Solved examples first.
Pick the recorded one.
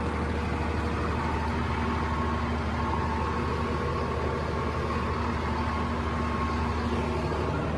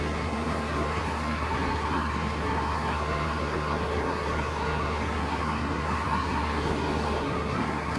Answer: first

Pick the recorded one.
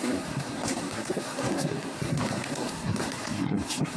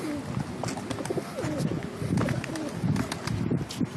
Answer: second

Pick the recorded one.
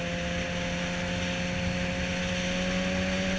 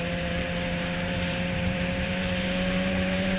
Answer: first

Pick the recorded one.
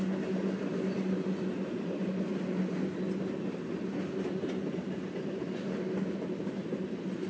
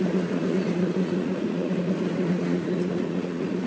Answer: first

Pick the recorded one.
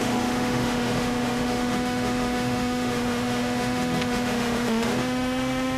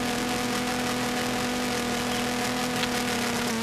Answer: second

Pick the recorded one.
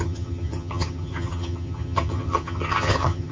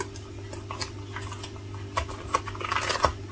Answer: second